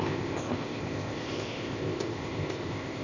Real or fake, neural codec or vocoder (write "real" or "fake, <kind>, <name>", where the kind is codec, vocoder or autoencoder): fake, codec, ZipCodec